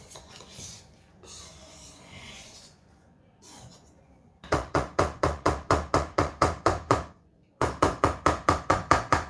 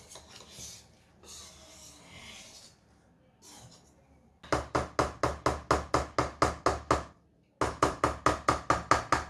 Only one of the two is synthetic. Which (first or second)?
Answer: first